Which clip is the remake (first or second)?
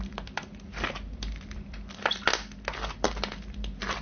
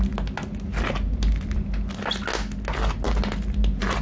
first